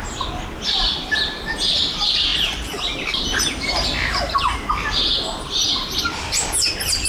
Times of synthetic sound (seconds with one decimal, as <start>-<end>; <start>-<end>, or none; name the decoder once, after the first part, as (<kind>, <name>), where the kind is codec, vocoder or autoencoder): none